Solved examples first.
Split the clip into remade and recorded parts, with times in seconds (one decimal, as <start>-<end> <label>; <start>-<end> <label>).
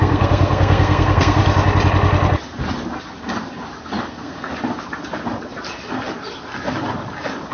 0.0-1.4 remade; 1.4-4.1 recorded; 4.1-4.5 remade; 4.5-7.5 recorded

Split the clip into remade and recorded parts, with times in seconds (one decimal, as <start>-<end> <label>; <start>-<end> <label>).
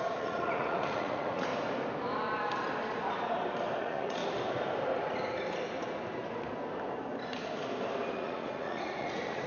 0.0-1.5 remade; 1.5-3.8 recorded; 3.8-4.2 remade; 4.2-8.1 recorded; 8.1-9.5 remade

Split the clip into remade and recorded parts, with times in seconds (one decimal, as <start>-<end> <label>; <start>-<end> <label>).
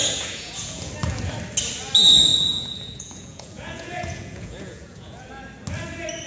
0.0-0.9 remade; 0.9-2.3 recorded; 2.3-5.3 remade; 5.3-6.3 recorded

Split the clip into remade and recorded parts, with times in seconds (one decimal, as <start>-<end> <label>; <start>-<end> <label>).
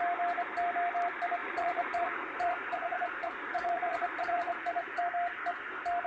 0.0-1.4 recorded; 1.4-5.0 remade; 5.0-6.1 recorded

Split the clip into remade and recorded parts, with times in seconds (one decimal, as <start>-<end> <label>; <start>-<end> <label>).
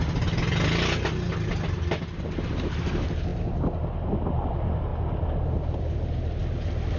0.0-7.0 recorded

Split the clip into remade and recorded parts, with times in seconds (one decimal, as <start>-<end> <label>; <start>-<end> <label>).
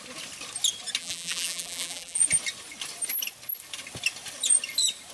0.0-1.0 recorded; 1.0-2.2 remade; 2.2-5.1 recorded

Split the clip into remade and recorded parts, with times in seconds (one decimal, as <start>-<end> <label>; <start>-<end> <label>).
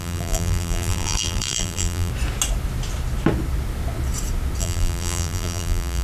0.0-2.1 remade; 2.1-4.6 recorded; 4.6-6.0 remade